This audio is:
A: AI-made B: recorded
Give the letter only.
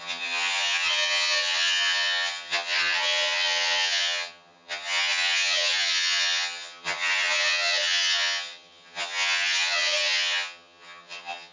A